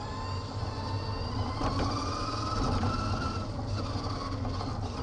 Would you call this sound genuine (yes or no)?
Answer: yes